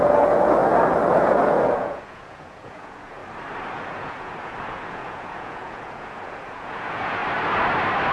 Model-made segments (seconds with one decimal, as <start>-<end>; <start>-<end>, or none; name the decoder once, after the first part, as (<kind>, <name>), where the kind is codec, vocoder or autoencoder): 0.0-0.6 (vocoder, Vocos); 1.1-3.2; 3.7-7.2